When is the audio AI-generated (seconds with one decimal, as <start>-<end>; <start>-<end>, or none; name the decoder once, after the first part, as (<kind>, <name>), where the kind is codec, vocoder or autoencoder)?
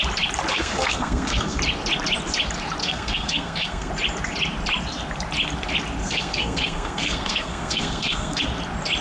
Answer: 0.5-1.6 (codec, SNAC); 2.8-3.9; 6.0-8.4